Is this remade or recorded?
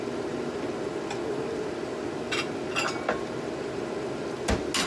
recorded